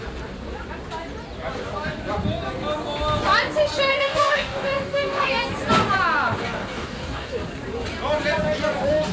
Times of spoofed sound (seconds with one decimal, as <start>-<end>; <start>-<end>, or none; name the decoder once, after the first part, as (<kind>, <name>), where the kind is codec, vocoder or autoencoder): 3.9-5.3 (codec, DAC); 6.6-7.3